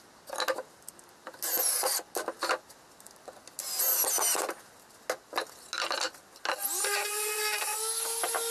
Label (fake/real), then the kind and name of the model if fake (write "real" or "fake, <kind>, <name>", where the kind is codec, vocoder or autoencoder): real